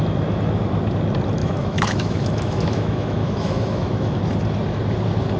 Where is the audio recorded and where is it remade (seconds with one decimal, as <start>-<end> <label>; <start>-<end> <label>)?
0.0-1.4 recorded; 1.4-4.2 remade; 4.2-5.4 recorded